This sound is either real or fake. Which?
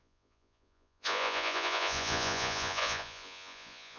fake